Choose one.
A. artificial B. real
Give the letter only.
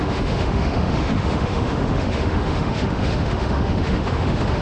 A